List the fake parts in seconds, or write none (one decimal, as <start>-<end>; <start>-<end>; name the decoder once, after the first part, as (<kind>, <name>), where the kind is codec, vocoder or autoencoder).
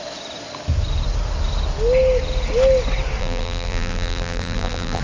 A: 3.2-5.0 (vocoder, BigVGAN v2)